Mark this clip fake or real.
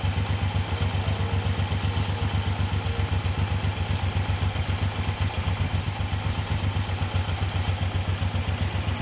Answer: real